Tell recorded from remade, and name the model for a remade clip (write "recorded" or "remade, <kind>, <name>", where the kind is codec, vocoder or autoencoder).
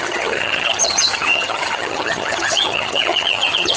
remade, vocoder, HiFi-GAN